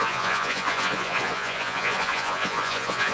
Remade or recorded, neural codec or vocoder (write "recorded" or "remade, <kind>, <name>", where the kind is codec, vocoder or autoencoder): remade, vocoder, Vocos